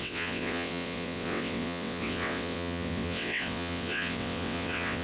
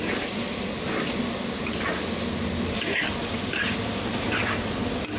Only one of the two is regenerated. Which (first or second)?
first